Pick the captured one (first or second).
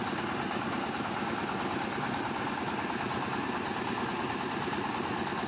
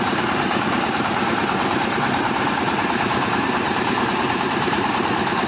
first